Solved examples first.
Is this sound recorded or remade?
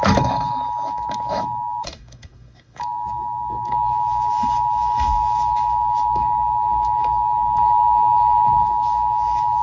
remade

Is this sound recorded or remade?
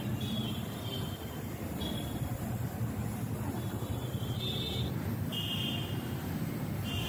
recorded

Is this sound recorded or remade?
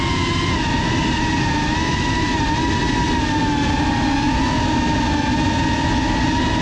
recorded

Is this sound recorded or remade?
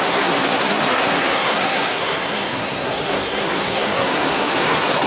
remade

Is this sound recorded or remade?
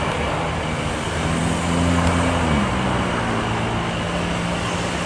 recorded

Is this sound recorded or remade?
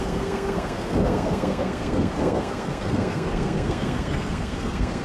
remade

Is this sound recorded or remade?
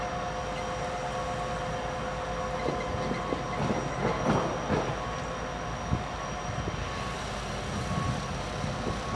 recorded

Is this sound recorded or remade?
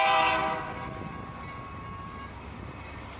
recorded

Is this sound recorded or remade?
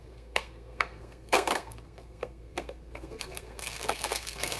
remade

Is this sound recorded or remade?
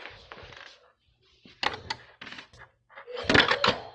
recorded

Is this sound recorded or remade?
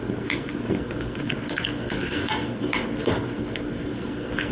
remade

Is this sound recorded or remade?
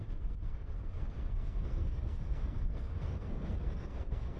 remade